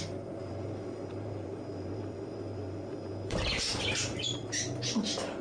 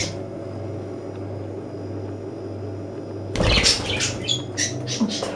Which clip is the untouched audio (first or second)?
second